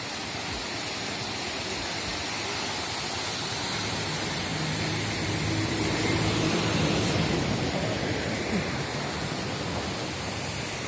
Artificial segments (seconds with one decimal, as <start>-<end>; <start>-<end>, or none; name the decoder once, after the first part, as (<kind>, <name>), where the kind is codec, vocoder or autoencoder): 0.0-4.5 (vocoder, BigVGAN v2); 5.4-10.9